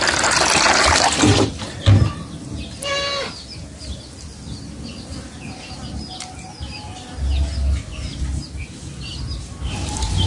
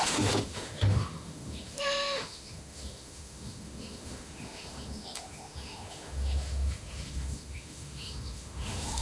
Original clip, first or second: first